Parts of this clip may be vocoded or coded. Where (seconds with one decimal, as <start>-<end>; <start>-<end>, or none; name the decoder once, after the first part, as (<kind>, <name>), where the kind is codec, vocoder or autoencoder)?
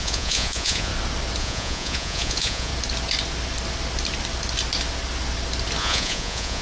0.0-0.9 (vocoder, Vocos); 1.4-2.7; 5.8-6.6